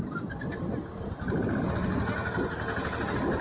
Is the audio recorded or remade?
recorded